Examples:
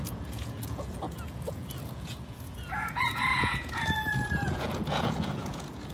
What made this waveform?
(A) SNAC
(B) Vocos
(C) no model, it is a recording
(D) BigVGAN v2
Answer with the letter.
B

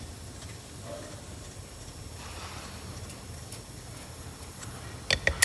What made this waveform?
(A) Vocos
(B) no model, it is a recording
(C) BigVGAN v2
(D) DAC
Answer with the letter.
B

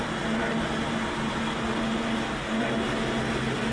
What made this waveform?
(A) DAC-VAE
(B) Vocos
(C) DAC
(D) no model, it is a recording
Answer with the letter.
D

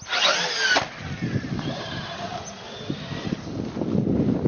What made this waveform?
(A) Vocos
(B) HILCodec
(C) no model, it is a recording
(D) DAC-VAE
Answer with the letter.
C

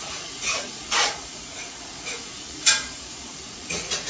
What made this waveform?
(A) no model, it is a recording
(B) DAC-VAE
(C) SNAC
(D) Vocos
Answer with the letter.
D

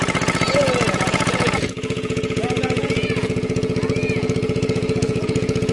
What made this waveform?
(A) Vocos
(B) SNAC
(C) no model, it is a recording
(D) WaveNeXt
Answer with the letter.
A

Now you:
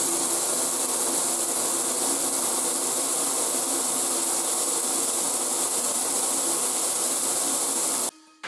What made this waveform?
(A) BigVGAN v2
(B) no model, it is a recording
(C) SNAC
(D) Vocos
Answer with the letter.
B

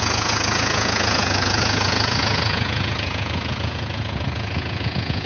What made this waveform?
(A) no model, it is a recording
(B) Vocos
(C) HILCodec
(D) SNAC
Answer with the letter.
B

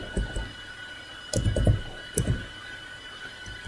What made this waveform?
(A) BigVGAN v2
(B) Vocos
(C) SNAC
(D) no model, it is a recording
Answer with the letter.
D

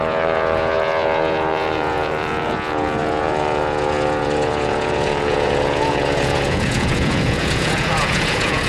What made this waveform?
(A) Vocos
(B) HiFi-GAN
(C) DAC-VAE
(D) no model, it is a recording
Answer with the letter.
A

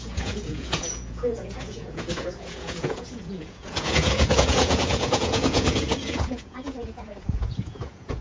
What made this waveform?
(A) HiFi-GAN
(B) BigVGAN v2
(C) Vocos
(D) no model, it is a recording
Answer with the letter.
C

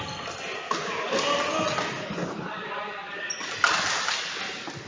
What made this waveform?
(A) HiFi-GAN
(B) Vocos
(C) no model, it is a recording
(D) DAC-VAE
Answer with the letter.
C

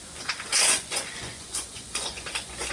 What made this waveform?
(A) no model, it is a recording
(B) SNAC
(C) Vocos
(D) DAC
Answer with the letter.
C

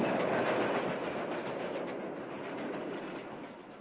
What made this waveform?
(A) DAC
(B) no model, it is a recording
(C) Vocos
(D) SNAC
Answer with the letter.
B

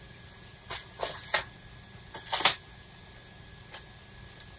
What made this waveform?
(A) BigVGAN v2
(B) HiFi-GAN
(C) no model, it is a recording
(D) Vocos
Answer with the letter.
C